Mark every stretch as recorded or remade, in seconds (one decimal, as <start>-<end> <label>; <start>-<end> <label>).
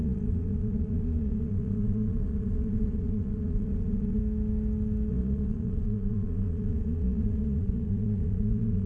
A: 0.0-4.2 remade; 4.2-5.1 recorded; 5.1-8.9 remade